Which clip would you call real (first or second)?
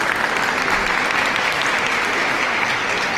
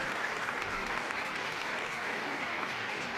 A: first